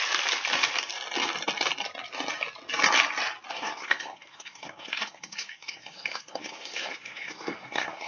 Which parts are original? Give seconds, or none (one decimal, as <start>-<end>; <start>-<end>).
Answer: 0.0-3.5